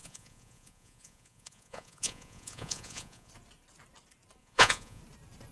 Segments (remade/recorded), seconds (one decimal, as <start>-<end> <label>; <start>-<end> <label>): 0.0-3.3 remade; 3.3-4.4 recorded; 4.4-5.0 remade; 5.0-5.5 recorded